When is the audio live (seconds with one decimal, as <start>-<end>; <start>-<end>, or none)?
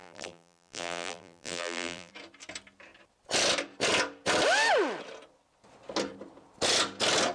2.1-7.3